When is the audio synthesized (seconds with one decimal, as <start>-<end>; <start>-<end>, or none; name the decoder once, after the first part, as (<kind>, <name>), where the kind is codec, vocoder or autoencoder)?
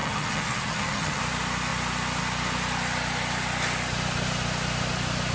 0.0-1.2 (vocoder, HiFi-GAN)